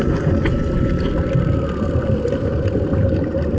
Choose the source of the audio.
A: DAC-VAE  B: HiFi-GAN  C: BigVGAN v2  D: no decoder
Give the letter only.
D